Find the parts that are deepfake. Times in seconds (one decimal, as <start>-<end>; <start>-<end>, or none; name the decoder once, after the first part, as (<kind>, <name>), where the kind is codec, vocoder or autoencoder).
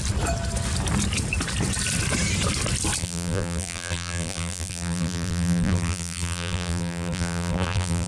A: 3.0-8.1 (vocoder, BigVGAN v2)